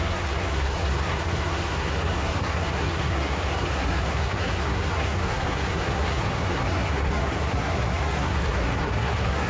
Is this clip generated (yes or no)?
yes